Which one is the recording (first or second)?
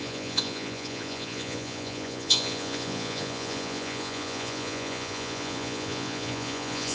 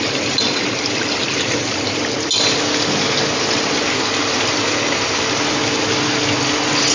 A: second